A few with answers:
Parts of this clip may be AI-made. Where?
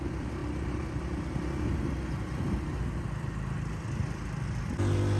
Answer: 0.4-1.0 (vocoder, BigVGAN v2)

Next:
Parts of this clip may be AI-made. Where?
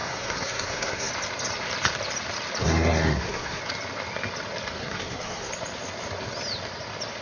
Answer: 0.0-1.1 (codec, SNAC); 2.6-3.6; 4.8-5.5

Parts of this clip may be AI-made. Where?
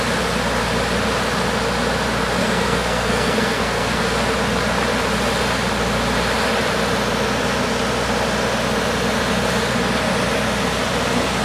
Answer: 2.4-4.0 (codec, SNAC)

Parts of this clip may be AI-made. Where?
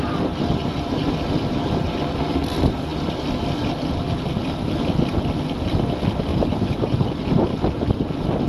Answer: 6.3-7.1 (vocoder, BigVGAN v2)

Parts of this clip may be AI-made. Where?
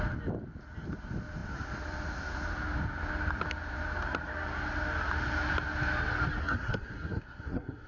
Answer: 6.4-7.9 (codec, SNAC)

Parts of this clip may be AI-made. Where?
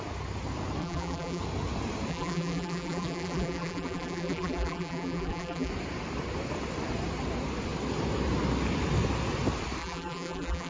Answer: 0.8-1.4 (vocoder, BigVGAN v2); 2.1-5.7; 9.8-10.7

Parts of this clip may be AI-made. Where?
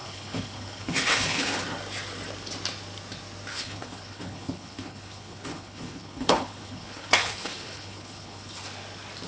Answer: 0.0-1.6 (codec, HILCodec); 3.5-8.6